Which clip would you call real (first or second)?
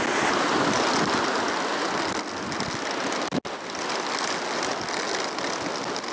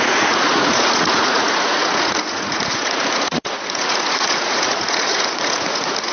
first